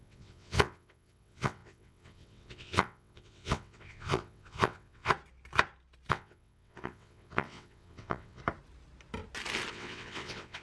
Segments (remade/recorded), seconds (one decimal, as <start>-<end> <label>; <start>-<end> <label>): 0.0-5.1 remade; 5.1-6.1 recorded; 6.1-8.4 remade; 8.4-9.7 recorded; 9.7-10.6 remade